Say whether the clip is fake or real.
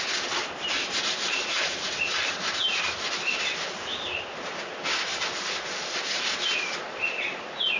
real